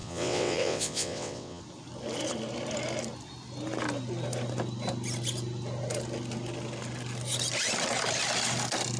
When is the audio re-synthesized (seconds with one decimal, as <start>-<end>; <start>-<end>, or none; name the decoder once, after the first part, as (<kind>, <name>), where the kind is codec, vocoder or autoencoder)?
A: 0.0-1.6 (vocoder, WaveNeXt)